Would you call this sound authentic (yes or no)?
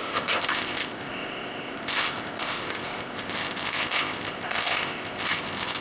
no